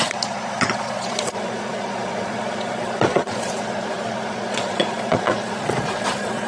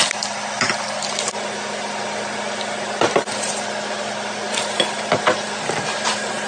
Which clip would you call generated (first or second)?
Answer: first